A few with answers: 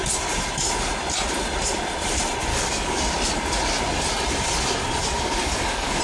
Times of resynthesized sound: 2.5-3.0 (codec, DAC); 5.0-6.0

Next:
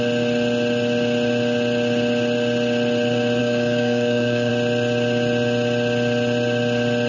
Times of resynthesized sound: 3.4-4.5 (codec, DAC)

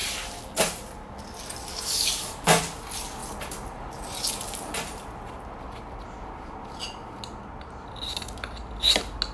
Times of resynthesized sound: 1.7-2.6 (codec, DAC)

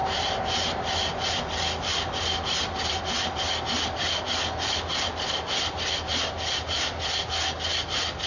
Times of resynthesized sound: none

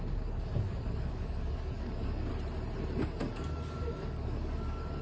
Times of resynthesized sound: 0.0-2.3 (codec, DAC); 3.0-5.0